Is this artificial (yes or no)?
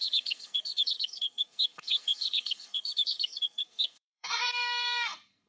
yes